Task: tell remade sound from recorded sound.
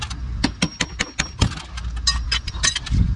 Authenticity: recorded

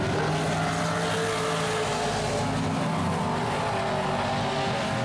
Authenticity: recorded